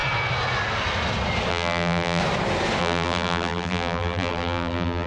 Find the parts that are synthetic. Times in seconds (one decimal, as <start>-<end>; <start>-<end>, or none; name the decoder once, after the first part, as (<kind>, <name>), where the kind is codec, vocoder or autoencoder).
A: 1.5-2.2 (vocoder, BigVGAN v2); 2.8-5.1